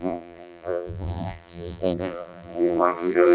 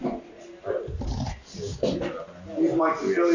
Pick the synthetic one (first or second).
first